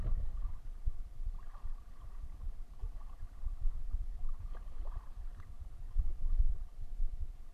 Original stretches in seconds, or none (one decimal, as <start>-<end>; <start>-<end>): none

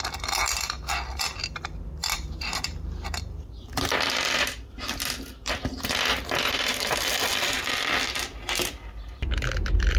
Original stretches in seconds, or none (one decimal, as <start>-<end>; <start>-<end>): 0.0-2.0; 7.0-10.0